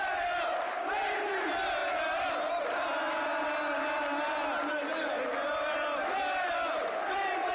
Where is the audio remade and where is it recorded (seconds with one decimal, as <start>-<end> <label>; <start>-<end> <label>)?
0.0-7.5 recorded